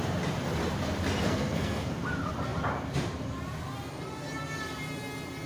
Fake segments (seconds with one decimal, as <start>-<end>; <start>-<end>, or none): 1.2-1.9